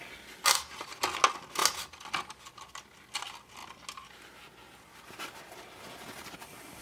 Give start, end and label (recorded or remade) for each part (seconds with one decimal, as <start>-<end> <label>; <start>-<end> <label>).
0.0-6.8 recorded